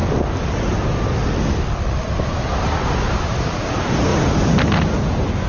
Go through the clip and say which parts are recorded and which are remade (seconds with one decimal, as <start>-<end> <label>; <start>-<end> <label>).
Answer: 0.0-4.1 recorded; 4.1-4.7 remade; 4.7-5.5 recorded